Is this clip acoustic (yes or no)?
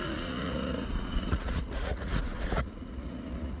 no